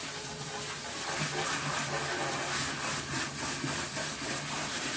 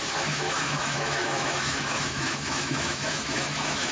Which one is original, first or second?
first